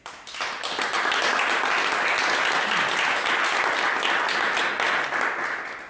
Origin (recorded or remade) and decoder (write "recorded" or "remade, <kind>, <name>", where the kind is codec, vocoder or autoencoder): recorded